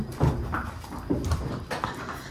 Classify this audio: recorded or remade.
recorded